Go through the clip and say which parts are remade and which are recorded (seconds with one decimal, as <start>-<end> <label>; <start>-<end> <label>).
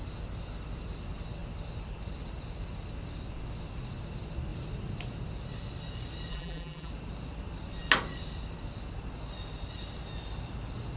0.0-6.3 recorded; 6.3-6.9 remade; 6.9-11.0 recorded